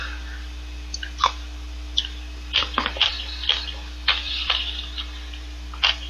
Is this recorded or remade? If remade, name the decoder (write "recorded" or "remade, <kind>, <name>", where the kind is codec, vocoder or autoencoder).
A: remade, vocoder, BigVGAN v2